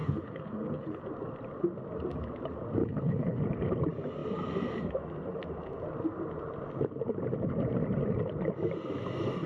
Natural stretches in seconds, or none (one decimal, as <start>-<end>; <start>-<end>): 1.0-2.8; 3.4-9.5